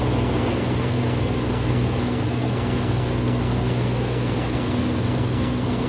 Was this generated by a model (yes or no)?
yes